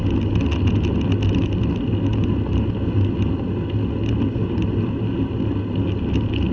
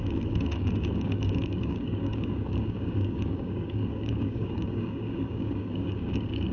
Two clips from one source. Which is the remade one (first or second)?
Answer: second